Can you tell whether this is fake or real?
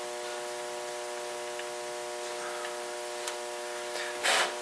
real